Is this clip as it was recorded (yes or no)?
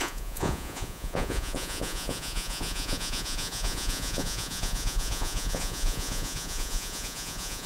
no